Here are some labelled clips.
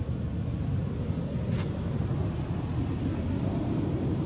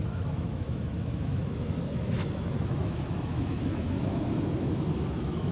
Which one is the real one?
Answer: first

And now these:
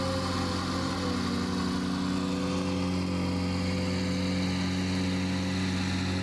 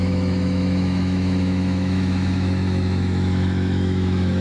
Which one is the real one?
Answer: first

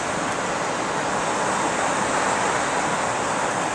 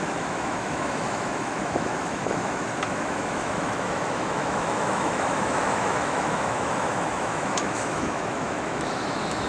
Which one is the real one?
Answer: first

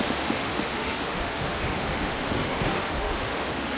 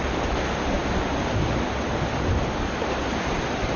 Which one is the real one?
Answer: second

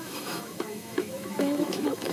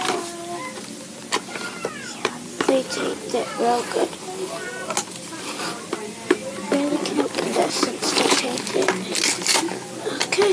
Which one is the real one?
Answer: second